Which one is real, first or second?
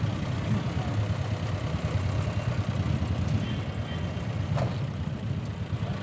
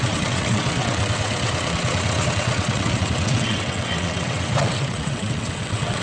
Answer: first